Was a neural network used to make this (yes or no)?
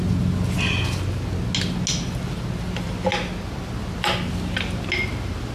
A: no